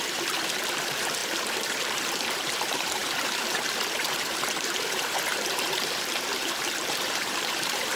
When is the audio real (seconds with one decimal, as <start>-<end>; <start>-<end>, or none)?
none